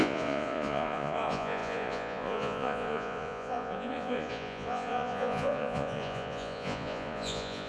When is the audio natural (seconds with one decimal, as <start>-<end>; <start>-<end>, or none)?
none